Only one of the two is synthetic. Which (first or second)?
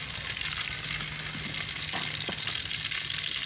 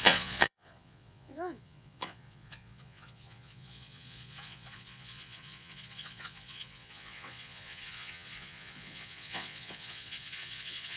second